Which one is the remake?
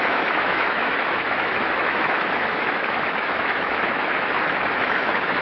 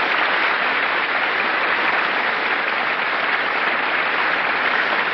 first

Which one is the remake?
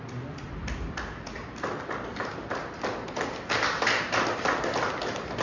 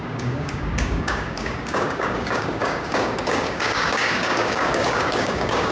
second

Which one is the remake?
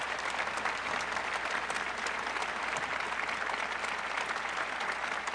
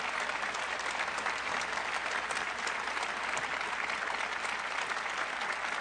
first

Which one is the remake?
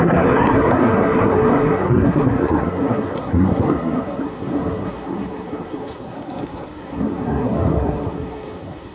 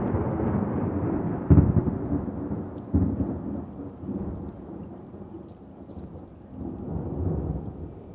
first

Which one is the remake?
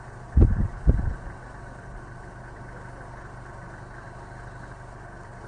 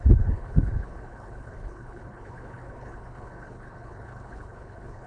second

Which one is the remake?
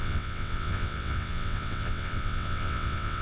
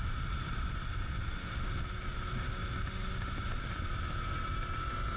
first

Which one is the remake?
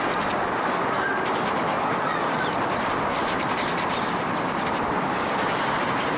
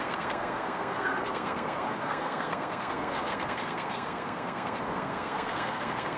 second